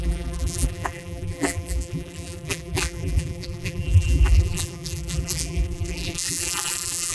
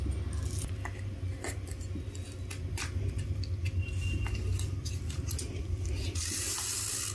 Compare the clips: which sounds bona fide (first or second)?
second